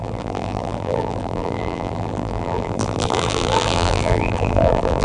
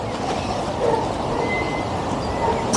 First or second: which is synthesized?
first